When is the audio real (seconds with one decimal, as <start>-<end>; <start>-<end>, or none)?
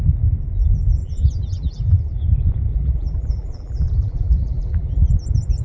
0.0-1.0; 2.2-2.7; 5.1-5.6